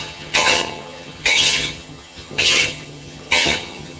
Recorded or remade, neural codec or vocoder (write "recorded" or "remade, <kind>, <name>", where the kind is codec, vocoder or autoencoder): remade, vocoder, HiFi-GAN